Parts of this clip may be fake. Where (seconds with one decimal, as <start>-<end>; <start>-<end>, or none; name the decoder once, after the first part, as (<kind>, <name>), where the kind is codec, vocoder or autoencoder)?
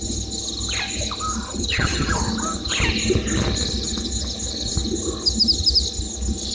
1.5-2.2 (vocoder, HiFi-GAN)